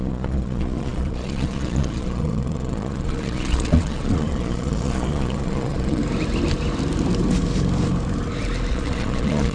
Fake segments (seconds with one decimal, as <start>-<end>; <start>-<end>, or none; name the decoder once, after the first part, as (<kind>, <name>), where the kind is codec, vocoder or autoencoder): 0.0-6.0 (vocoder, Vocos); 8.7-9.5